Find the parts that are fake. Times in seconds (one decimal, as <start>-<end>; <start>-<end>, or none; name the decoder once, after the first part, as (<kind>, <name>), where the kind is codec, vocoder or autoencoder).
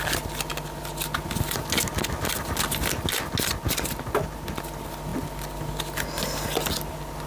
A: none